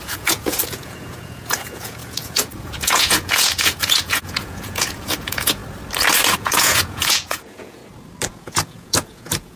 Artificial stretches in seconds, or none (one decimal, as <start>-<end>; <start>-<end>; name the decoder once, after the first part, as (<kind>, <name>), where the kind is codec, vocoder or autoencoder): 0.0-5.6 (vocoder, Vocos); 6.3-7.8; 8.3-9.6